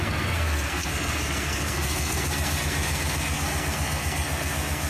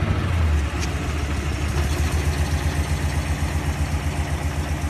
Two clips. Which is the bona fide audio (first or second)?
second